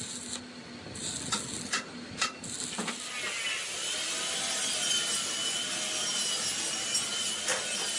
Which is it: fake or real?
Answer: real